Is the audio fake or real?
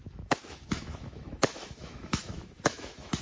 fake